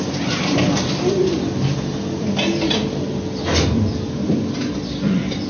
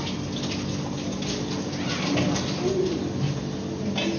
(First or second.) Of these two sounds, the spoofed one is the first